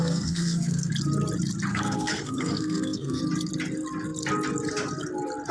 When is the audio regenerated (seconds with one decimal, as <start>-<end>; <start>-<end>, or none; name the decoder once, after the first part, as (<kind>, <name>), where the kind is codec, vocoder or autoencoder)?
0.0-0.9 (codec, SNAC); 1.7-3.2